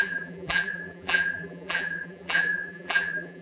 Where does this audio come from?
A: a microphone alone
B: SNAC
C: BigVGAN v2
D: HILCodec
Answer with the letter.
C